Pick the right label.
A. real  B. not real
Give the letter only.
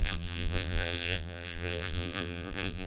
B